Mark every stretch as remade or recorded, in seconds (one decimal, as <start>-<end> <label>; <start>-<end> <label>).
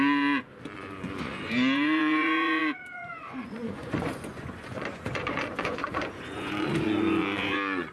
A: 0.0-0.5 remade; 0.5-1.2 recorded; 1.2-7.9 remade